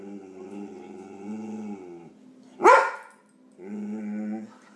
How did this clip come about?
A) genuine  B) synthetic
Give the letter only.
A